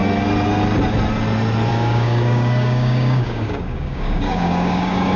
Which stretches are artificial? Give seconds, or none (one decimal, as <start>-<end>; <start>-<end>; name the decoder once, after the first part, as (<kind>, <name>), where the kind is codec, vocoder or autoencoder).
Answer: 1.7-5.2 (codec, DAC)